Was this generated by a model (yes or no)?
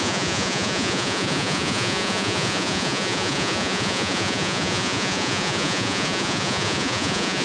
yes